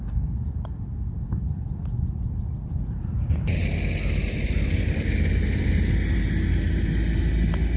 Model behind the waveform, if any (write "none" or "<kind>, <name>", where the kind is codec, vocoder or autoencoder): none